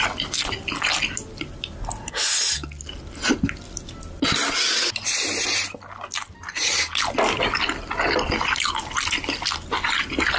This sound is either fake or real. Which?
real